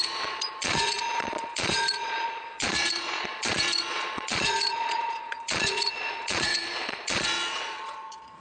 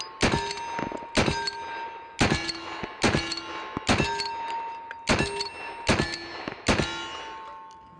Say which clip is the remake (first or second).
first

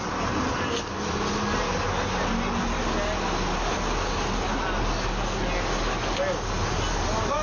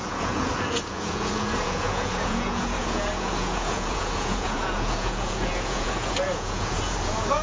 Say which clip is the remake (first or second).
second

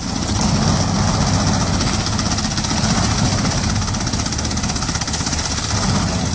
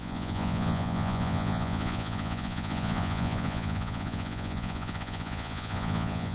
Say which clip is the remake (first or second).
second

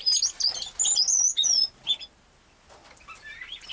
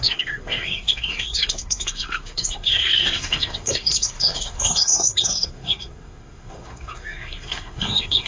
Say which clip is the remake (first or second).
second